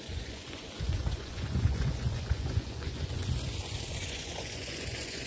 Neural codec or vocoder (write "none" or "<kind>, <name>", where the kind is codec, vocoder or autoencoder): vocoder, Vocos